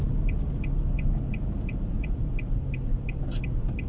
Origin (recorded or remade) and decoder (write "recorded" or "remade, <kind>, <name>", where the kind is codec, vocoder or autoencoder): recorded